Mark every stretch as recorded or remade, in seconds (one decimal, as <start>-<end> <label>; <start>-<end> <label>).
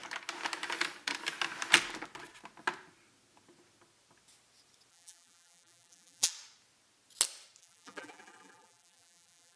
0.0-4.9 recorded; 4.9-6.3 remade; 6.3-7.6 recorded; 7.6-9.6 remade